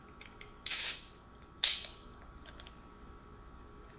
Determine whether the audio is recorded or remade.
remade